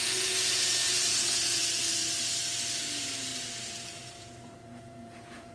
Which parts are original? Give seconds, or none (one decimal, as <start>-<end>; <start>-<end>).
1.6-2.8; 3.3-4.0